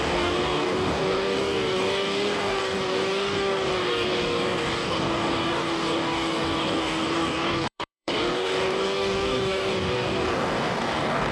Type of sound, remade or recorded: remade